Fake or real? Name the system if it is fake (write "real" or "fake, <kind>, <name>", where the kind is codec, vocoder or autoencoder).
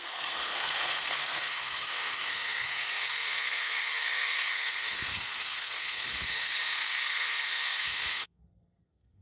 fake, codec, SNAC